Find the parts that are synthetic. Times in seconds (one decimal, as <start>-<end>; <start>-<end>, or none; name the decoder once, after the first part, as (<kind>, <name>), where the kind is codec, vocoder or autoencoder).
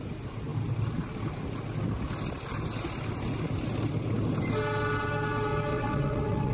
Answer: 5.7-6.5 (vocoder, WaveNeXt)